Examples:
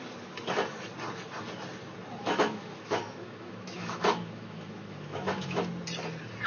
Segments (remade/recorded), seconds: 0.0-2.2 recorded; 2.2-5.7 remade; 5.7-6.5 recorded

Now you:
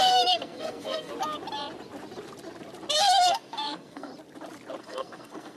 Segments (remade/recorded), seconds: 0.0-1.1 remade; 1.1-3.0 recorded; 3.0-4.1 remade; 4.1-4.8 recorded; 4.8-5.6 remade

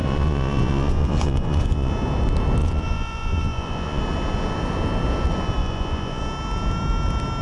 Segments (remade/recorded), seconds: 0.0-1.9 remade; 1.9-2.6 recorded; 2.6-4.0 remade; 4.0-5.6 recorded; 5.6-6.2 remade; 6.2-7.4 recorded

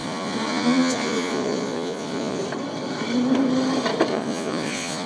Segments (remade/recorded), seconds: 0.0-2.4 remade; 2.4-4.1 recorded; 4.1-5.1 remade

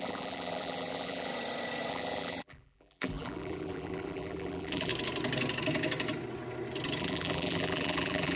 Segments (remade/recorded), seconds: 0.0-1.3 remade; 1.3-1.9 recorded; 1.9-4.9 remade; 4.9-7.0 recorded; 7.0-8.4 remade

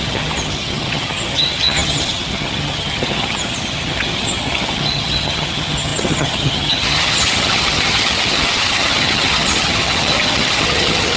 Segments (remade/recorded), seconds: 0.0-11.2 remade